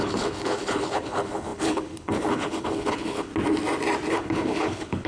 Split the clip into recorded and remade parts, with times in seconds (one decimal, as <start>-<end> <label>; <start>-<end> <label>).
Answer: 0.0-3.3 remade; 3.3-4.1 recorded; 4.1-5.1 remade